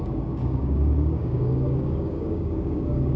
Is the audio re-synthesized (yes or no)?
yes